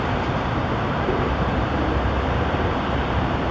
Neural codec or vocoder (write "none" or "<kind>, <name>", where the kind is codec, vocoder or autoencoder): vocoder, BigVGAN v2